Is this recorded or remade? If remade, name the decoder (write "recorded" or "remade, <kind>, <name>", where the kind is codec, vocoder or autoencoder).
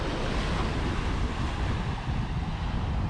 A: recorded